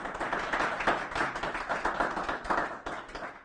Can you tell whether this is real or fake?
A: real